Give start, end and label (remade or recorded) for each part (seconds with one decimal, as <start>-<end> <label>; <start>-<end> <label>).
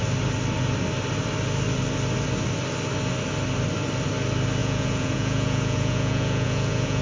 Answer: 0.0-4.6 recorded; 4.6-7.0 remade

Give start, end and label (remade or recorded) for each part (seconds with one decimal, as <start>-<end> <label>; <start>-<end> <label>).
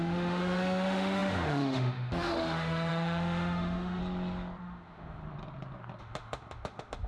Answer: 0.0-4.0 remade; 4.0-4.6 recorded; 4.6-5.2 remade; 5.2-6.0 recorded; 6.0-7.1 remade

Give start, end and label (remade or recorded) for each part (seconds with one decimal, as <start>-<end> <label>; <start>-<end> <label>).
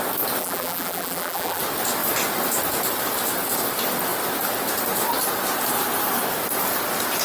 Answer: 0.0-0.4 recorded; 0.4-1.6 remade; 1.6-7.2 recorded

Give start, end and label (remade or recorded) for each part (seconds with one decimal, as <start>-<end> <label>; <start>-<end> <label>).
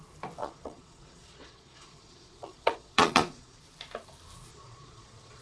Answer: 0.0-0.4 recorded; 0.4-3.6 remade; 3.6-4.5 recorded; 4.5-5.4 remade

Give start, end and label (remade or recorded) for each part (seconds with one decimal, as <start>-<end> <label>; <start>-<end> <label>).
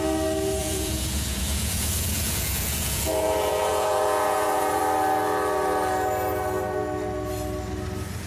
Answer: 0.0-0.6 recorded; 0.6-4.8 remade; 4.8-8.3 recorded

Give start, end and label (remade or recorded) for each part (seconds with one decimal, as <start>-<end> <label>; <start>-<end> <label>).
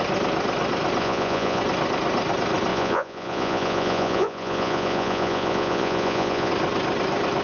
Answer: 0.0-1.0 recorded; 1.0-1.6 remade; 1.6-2.7 recorded; 2.7-6.5 remade; 6.5-7.4 recorded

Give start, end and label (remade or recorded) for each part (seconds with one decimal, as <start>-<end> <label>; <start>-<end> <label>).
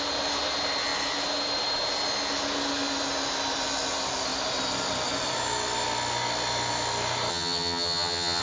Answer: 0.0-7.3 recorded; 7.3-8.4 remade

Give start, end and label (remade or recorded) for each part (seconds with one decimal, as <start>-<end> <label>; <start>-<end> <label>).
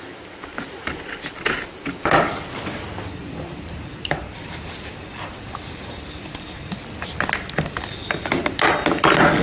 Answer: 0.0-3.2 recorded; 3.2-6.7 remade; 6.7-9.4 recorded